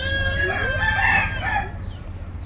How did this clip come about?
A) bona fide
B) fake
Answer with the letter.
A